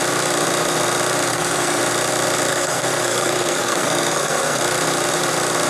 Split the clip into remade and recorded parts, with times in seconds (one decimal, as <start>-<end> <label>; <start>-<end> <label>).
0.0-1.3 recorded; 1.3-1.8 remade; 1.8-2.5 recorded; 2.5-4.6 remade; 4.6-5.7 recorded